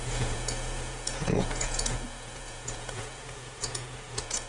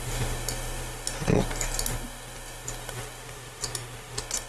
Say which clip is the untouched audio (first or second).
second